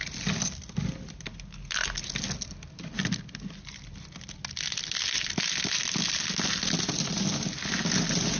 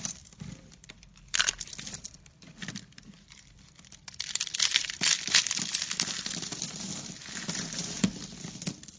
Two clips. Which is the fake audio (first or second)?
second